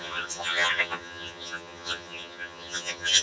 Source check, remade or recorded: remade